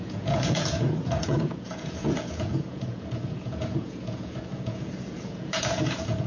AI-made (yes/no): yes